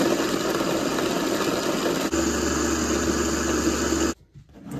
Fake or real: real